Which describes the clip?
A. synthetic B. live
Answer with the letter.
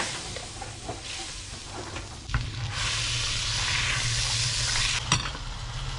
B